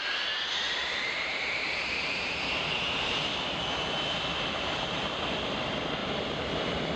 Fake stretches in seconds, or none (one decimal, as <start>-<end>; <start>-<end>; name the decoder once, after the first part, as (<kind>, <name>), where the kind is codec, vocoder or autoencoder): 0.8-3.4 (vocoder, BigVGAN v2); 6.0-7.0